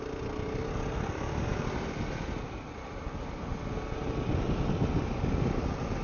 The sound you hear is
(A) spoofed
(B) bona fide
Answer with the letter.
B